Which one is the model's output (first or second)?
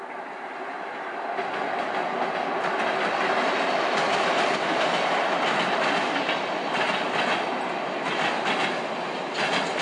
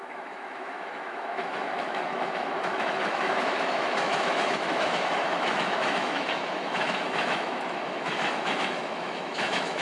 second